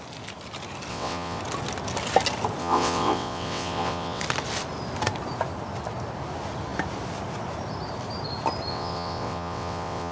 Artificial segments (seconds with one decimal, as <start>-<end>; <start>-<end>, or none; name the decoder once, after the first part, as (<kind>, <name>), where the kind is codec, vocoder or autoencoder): 0.9-1.4 (vocoder, WaveNeXt); 2.6-4.2; 8.7-10.1